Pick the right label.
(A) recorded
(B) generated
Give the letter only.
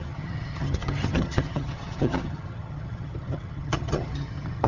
B